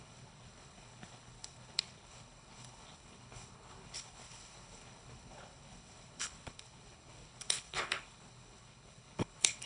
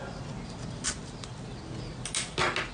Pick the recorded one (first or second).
second